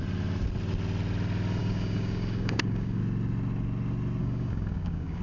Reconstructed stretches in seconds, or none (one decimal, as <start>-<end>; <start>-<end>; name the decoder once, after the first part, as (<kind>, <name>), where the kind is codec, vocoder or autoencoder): 1.6-3.0 (codec, DAC); 4.2-5.2